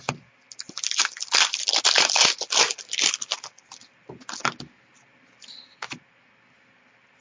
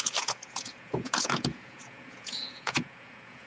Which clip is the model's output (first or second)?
second